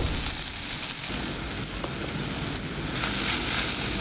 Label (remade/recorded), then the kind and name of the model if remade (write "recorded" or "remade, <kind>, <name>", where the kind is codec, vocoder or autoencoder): recorded